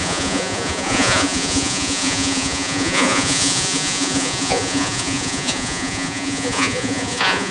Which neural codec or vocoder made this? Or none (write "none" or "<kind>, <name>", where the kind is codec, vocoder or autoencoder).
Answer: vocoder, Vocos